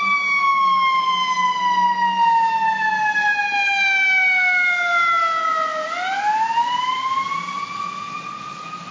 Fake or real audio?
real